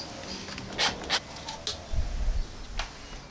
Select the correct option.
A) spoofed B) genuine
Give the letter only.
B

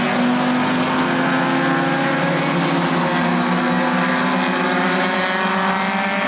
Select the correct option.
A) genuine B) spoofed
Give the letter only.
A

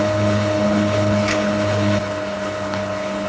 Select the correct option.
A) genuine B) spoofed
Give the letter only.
B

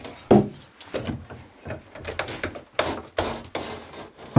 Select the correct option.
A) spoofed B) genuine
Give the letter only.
B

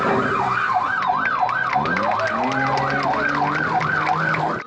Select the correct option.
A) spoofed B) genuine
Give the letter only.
B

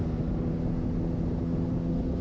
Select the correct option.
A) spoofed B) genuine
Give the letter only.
B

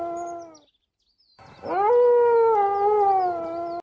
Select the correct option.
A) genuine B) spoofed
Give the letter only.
A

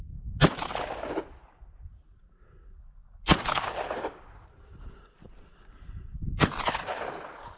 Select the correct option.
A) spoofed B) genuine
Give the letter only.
B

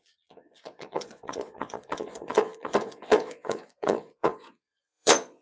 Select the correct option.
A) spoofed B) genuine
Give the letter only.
A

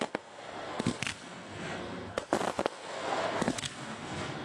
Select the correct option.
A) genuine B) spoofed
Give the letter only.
B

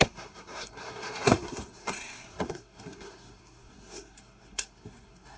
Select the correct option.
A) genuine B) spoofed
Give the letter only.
B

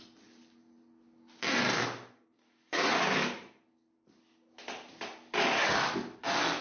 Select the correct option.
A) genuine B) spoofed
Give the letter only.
A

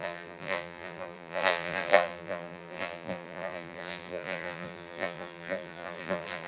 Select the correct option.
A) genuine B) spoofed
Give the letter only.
B